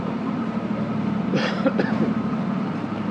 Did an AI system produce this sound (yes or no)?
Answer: yes